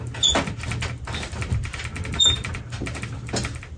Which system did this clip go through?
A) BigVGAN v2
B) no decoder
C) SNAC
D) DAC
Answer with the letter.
B